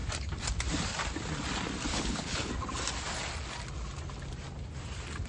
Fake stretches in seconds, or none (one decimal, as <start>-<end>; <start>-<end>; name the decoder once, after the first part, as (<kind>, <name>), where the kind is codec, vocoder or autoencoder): 1.9-2.5 (codec, HILCodec)